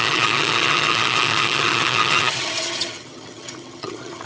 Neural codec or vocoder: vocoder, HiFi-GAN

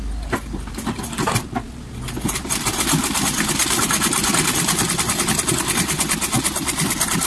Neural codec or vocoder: none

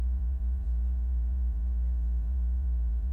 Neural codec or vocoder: vocoder, BigVGAN v2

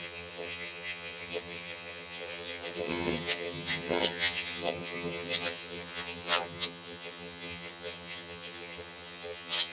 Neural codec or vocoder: vocoder, HiFi-GAN